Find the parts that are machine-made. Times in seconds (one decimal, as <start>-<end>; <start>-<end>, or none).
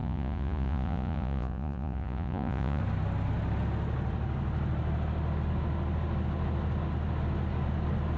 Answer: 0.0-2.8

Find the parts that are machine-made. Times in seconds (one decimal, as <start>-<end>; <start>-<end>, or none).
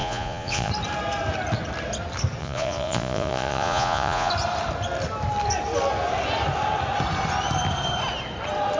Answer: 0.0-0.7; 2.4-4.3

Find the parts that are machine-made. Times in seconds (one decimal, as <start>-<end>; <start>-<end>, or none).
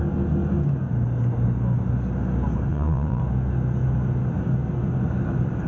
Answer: 2.7-3.2